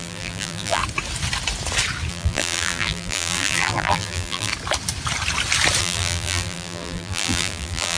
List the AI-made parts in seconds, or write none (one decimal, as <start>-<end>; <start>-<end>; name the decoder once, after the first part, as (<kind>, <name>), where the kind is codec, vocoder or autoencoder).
0.0-0.8 (vocoder, BigVGAN v2); 2.1-4.5; 5.8-8.0